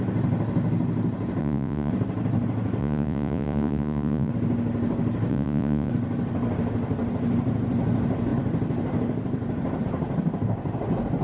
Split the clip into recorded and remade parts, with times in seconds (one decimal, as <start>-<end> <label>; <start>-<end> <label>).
0.0-1.4 recorded; 1.4-1.9 remade; 1.9-2.8 recorded; 2.8-4.3 remade; 4.3-5.3 recorded; 5.3-5.9 remade; 5.9-11.2 recorded